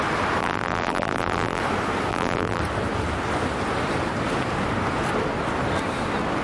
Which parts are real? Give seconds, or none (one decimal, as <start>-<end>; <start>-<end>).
0.0-0.4; 1.6-2.1; 2.6-6.4